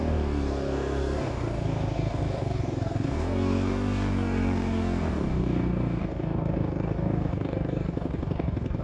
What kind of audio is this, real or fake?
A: fake